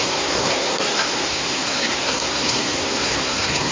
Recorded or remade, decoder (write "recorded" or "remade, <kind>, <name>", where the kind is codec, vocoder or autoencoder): remade, codec, SNAC